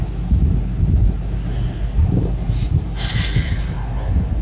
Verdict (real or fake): real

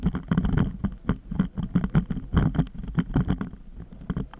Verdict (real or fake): real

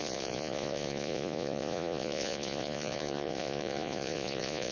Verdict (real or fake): fake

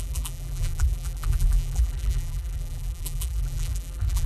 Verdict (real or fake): fake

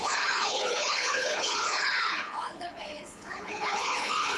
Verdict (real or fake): fake